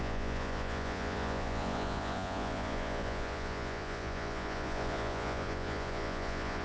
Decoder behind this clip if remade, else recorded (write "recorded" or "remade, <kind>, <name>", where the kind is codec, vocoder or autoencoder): remade, vocoder, Vocos